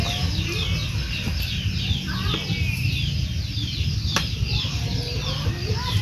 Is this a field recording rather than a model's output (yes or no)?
yes